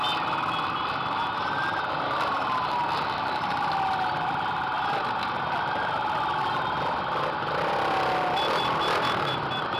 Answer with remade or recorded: recorded